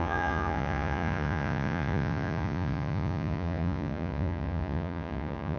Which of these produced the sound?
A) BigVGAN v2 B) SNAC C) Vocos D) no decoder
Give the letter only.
C